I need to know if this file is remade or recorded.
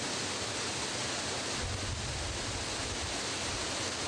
recorded